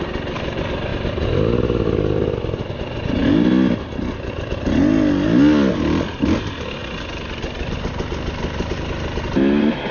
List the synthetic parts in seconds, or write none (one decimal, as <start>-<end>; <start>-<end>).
0.9-2.7